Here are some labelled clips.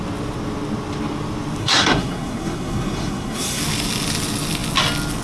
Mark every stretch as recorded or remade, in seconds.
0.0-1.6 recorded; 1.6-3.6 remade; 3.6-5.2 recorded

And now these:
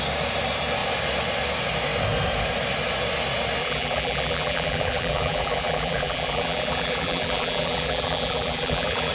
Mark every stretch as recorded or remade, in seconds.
0.0-3.6 recorded; 3.6-9.1 remade